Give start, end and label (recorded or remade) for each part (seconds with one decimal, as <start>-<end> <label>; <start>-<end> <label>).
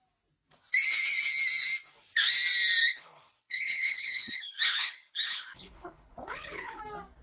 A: 0.0-2.9 recorded; 2.9-6.8 remade; 6.8-7.2 recorded